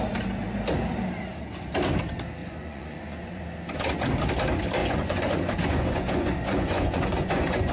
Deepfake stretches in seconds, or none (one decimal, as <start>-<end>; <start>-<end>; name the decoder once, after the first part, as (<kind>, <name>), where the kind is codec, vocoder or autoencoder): 2.4-3.4 (vocoder, Vocos); 4.8-7.7